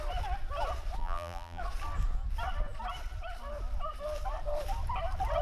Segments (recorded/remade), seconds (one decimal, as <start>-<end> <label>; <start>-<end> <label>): 0.0-1.0 recorded; 1.0-1.6 remade; 1.6-5.4 recorded